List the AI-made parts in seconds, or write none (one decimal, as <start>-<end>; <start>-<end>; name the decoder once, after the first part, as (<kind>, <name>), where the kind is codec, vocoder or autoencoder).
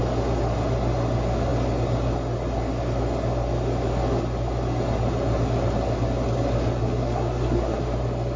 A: 6.8-7.8 (codec, SNAC)